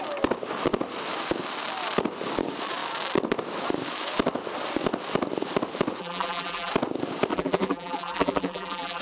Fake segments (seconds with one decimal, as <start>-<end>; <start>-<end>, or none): 6.0-6.7; 7.3-9.0